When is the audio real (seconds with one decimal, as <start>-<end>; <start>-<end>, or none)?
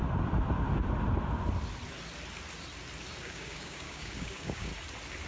0.0-3.2; 4.7-5.3